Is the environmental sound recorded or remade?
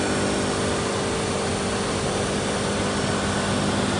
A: recorded